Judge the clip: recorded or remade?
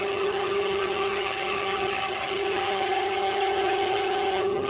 remade